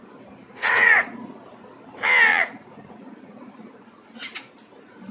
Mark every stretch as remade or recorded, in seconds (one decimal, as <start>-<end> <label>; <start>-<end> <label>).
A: 0.0-0.4 recorded; 0.4-1.3 remade; 1.3-2.3 recorded; 2.3-3.7 remade; 3.7-5.1 recorded

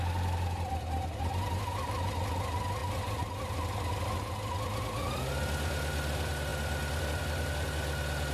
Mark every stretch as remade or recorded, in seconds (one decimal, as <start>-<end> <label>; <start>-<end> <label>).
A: 0.0-8.3 recorded

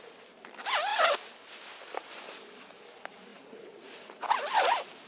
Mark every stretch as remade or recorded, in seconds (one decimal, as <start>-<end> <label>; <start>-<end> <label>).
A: 0.0-3.3 recorded; 3.3-4.4 remade; 4.4-5.1 recorded